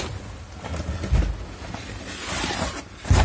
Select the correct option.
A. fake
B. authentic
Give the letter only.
B